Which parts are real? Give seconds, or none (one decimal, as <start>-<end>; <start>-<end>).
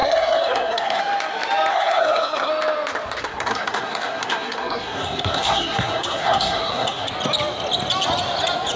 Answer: 1.0-1.7; 2.5-3.2; 7.1-8.8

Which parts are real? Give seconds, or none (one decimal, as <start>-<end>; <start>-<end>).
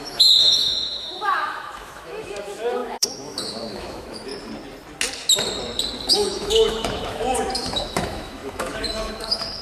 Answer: 4.3-6.1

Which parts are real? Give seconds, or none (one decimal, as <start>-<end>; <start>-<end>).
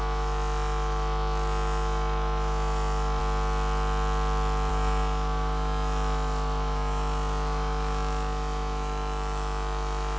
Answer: 3.2-4.7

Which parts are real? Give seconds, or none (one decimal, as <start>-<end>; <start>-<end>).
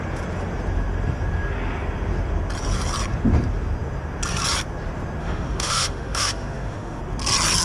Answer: 0.0-5.2; 7.0-7.6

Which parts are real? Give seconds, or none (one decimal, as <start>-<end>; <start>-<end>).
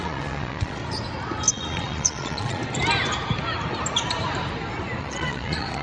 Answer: 0.8-1.5; 2.6-5.0